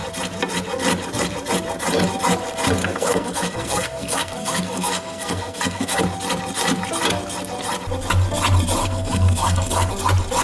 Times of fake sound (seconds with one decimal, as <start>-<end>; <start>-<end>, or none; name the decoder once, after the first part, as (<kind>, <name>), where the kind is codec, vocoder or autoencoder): 2.8-6.0 (codec, SNAC); 8.8-9.9